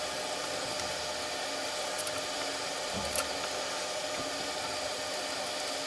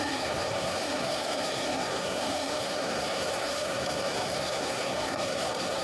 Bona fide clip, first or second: first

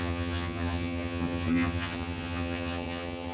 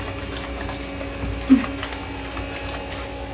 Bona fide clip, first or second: second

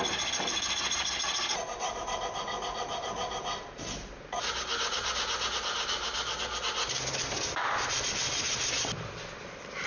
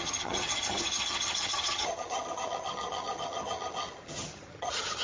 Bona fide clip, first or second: first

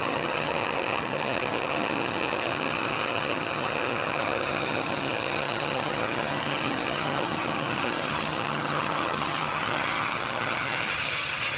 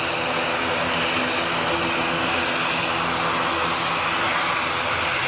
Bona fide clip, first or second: second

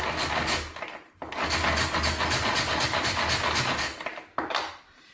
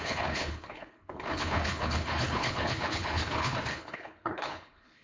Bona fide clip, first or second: first